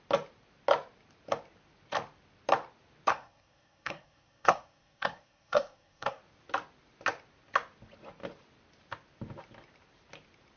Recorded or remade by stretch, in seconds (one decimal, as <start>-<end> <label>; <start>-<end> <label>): 0.0-3.1 recorded; 3.1-6.2 remade; 6.2-10.6 recorded